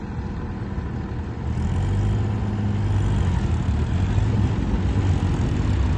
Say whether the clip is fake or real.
real